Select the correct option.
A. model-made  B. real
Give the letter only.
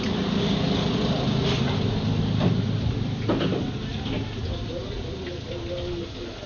B